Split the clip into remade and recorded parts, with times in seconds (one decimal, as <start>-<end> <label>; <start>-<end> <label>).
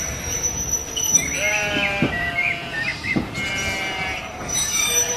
0.0-0.8 remade; 0.8-1.5 recorded; 1.5-5.2 remade